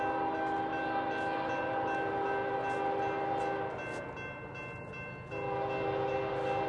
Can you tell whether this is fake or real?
real